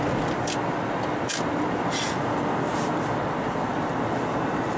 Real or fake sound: real